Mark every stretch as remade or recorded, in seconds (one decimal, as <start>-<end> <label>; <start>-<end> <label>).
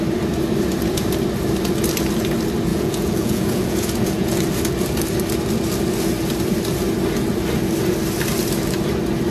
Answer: 0.0-2.7 recorded; 2.7-4.4 remade; 4.4-9.3 recorded